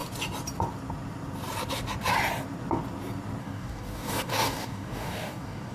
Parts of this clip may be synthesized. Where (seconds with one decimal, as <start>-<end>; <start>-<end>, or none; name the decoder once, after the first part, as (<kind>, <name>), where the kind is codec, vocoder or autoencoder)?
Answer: 3.4-5.7 (codec, DAC)